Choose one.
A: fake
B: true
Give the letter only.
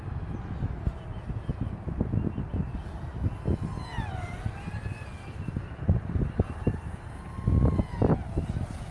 B